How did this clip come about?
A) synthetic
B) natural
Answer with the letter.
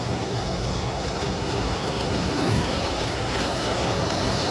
A